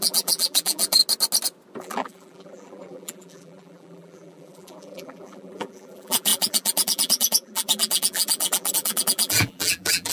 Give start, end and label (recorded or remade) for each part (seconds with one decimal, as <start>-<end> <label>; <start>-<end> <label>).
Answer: 0.0-1.0 remade; 1.0-1.8 recorded; 1.8-10.1 remade